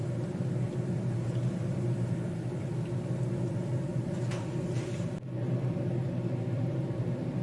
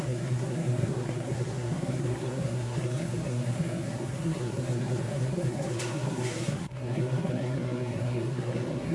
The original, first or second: first